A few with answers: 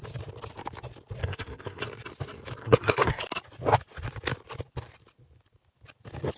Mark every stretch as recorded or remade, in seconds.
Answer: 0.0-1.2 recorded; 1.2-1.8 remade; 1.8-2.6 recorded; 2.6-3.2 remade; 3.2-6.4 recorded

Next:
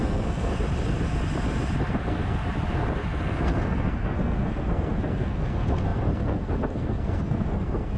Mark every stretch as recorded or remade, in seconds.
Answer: 0.0-0.5 remade; 0.5-1.9 recorded; 1.9-2.4 remade; 2.4-3.2 recorded; 3.2-8.0 remade